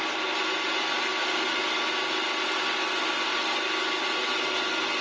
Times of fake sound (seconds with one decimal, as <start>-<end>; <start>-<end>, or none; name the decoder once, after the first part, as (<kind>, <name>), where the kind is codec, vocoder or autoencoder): none